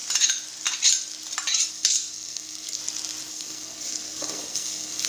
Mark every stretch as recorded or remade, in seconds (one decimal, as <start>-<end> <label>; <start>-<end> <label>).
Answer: 0.0-1.7 recorded; 1.7-2.8 remade; 2.8-3.3 recorded; 3.3-5.1 remade